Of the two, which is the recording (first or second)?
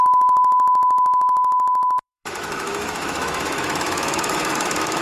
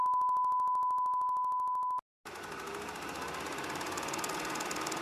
second